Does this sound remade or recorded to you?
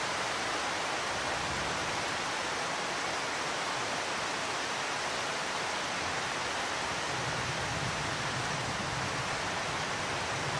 recorded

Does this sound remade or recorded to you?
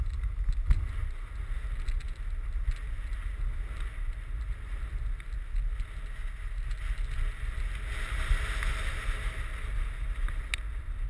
recorded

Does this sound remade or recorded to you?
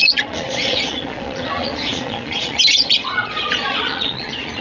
remade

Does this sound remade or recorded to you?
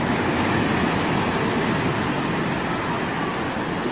recorded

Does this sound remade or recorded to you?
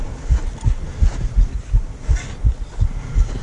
recorded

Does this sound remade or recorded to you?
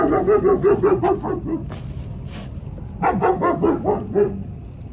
recorded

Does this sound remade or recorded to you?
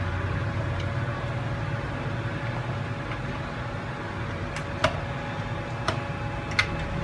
recorded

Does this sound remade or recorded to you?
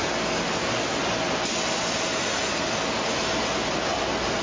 recorded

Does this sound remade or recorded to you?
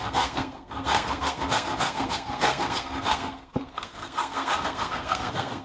remade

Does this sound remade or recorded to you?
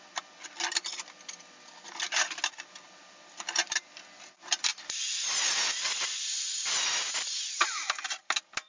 recorded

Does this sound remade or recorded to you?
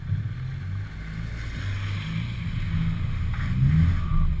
recorded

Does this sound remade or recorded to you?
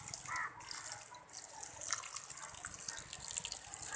recorded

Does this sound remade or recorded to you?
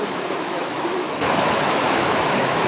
remade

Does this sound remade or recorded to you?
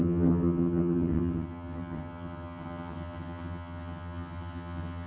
remade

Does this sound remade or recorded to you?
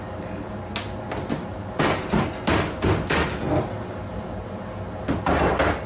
recorded